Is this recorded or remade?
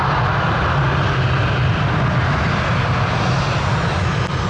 recorded